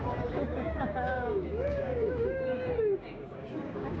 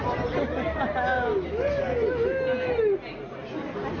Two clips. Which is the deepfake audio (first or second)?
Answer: first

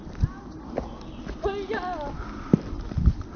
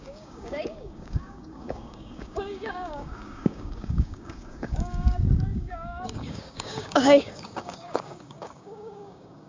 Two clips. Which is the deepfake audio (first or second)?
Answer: second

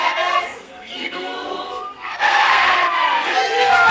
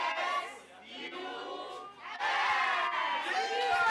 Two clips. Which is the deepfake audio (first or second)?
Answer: first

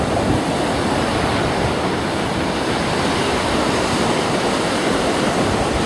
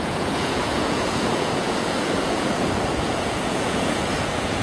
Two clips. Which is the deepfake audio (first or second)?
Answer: second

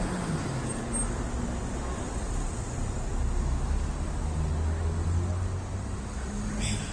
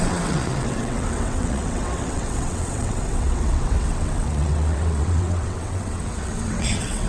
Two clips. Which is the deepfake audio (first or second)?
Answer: second